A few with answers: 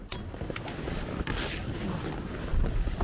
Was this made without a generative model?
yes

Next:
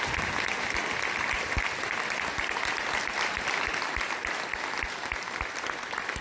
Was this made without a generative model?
yes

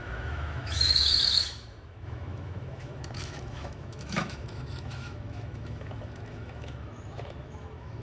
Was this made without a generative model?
no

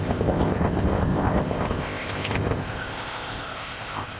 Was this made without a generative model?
no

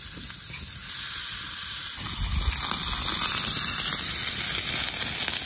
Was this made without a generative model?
yes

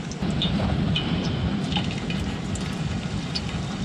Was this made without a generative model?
no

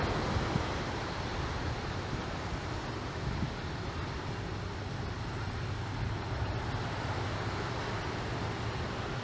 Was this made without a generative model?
yes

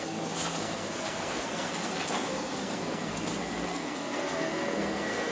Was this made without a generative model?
no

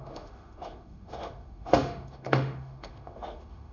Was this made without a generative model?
no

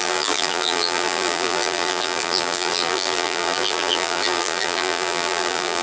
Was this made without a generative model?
no